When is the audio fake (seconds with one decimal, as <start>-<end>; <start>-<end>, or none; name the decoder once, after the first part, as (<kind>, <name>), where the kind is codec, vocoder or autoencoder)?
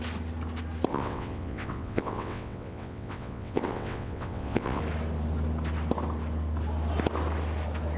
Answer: 0.9-4.8 (vocoder, WaveNeXt)